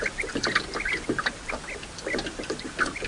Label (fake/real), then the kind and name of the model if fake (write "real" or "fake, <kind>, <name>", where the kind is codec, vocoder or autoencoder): real